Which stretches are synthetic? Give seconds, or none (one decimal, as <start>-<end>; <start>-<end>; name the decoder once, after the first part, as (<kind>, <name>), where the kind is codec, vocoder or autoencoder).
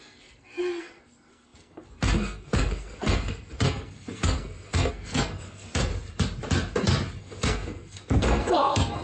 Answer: 0.0-5.9 (codec, SNAC); 7.2-9.0